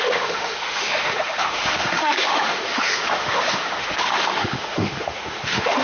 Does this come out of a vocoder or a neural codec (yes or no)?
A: yes